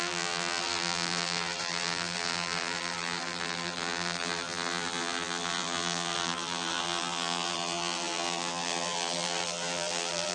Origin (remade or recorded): remade